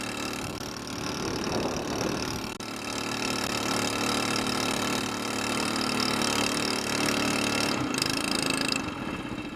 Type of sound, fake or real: real